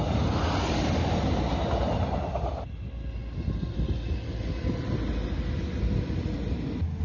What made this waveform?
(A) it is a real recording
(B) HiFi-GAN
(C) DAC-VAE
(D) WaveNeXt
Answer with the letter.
A